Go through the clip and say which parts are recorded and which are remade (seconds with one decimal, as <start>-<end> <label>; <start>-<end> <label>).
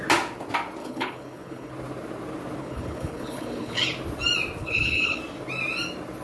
0.0-0.8 recorded; 0.8-1.7 remade; 1.7-2.6 recorded; 2.6-3.8 remade; 3.8-4.6 recorded; 4.6-5.2 remade; 5.2-6.2 recorded